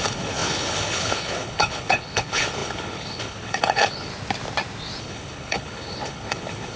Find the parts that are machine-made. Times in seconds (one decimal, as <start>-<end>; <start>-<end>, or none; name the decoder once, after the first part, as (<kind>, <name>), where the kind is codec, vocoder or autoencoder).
0.0-4.1 (codec, HILCodec); 5.0-6.8